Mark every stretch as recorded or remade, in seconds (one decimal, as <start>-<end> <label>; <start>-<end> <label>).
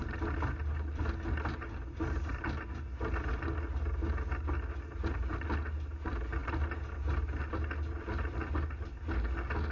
0.0-9.7 recorded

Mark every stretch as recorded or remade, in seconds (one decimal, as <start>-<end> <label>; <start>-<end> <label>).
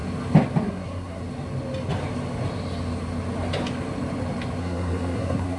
0.0-0.6 recorded; 0.6-1.2 remade; 1.2-4.6 recorded; 4.6-5.6 remade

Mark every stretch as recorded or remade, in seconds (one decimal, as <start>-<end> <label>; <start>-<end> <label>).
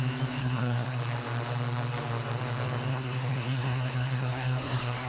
0.0-0.4 recorded; 0.4-1.0 remade; 1.0-2.9 recorded; 2.9-5.1 remade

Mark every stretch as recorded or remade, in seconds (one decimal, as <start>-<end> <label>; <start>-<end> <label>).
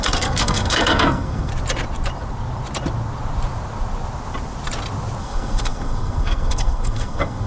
0.0-1.5 remade; 1.5-5.2 recorded; 5.2-7.5 remade